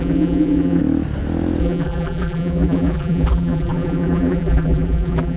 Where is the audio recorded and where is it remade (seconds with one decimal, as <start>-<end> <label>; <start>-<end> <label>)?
0.0-0.8 remade; 0.8-1.6 recorded; 1.6-5.4 remade